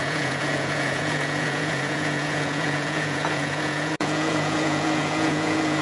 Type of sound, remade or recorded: remade